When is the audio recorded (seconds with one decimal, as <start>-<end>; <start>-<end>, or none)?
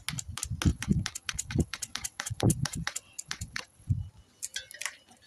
0.0-0.7; 3.9-5.3